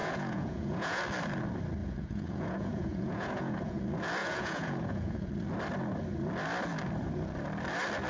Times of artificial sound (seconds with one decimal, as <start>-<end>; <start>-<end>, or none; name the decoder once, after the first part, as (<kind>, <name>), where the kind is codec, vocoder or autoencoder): 0.0-1.0 (vocoder, Vocos); 1.8-3.8; 4.2-5.3